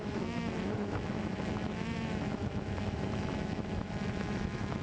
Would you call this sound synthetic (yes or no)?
yes